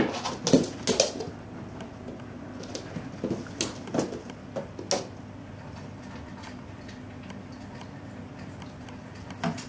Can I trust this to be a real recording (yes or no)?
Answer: yes